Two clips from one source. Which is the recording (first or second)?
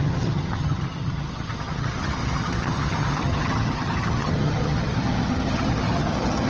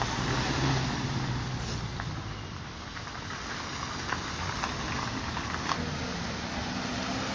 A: second